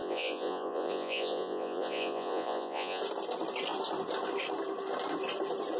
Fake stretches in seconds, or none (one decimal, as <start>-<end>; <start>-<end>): 0.0-3.0